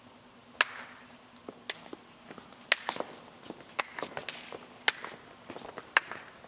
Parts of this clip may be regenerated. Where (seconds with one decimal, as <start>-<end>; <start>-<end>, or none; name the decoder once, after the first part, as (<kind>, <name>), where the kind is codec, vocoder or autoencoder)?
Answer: none